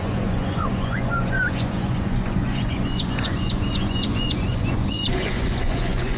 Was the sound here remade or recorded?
remade